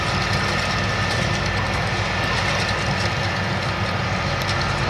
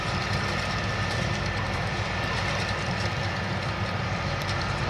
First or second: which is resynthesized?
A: second